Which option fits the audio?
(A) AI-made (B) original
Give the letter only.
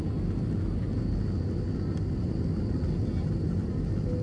B